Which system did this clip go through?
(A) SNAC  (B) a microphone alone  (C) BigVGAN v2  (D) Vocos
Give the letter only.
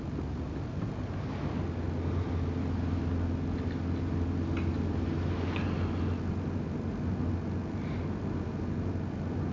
B